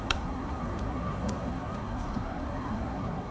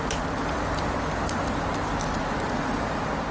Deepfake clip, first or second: first